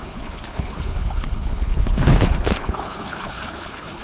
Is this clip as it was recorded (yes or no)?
no